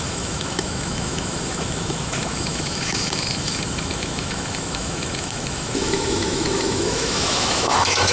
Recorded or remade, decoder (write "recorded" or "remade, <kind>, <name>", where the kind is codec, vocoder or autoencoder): remade, autoencoder, DAC-VAE